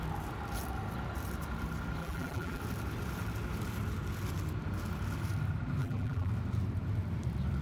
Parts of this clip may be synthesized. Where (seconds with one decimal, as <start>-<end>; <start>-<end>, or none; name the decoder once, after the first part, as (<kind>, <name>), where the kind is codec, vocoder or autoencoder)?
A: 2.0-2.6 (vocoder, BigVGAN v2); 5.8-6.3